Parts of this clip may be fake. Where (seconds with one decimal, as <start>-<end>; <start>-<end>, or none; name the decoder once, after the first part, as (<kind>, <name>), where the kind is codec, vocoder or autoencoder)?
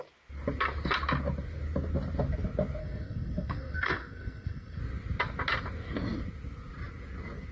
2.8-4.8 (codec, SNAC)